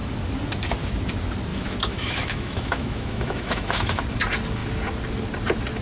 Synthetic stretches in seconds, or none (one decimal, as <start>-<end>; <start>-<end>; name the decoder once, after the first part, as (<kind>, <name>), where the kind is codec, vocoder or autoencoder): 1.5-4.0 (autoencoder, DAC-VAE)